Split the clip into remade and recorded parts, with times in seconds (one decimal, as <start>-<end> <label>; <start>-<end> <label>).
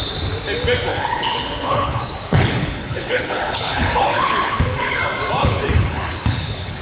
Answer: 0.0-0.9 recorded; 0.9-5.0 remade; 5.0-5.4 recorded; 5.4-6.8 remade